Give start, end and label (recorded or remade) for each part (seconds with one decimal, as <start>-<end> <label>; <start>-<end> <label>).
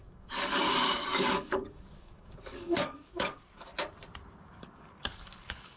0.0-3.7 remade; 3.7-4.4 recorded; 4.4-5.8 remade